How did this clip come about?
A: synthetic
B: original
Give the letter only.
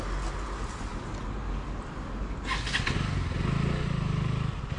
B